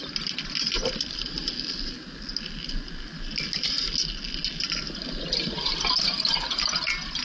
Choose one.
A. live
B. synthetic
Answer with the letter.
A